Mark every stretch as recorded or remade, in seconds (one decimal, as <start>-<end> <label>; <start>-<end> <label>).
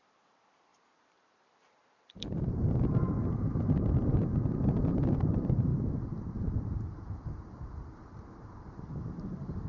0.0-5.7 remade; 5.7-6.3 recorded; 6.3-9.7 remade